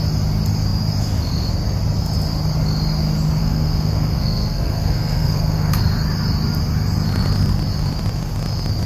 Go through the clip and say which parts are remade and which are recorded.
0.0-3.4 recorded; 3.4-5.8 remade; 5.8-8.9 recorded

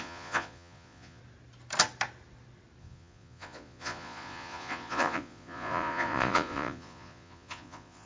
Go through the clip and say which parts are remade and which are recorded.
0.0-1.2 remade; 1.2-2.8 recorded; 2.8-8.1 remade